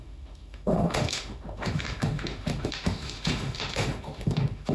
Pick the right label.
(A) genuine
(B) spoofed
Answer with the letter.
B